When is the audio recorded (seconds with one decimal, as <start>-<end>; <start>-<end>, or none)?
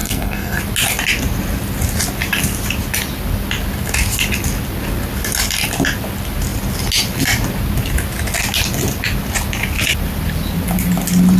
0.6-11.4